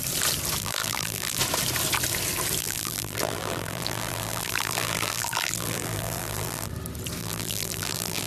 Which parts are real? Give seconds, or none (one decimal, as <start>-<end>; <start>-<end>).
0.0-0.6; 1.4-2.6; 6.7-7.2